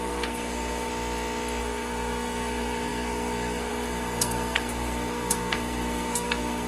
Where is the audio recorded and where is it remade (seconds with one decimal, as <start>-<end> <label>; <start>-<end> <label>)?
0.0-0.9 remade; 0.9-1.6 recorded; 1.6-6.7 remade